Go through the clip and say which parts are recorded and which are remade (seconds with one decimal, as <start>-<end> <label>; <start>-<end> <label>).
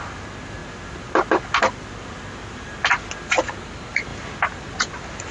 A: 0.0-5.3 recorded